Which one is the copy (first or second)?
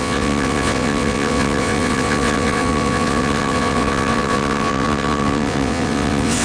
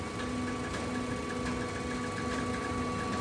first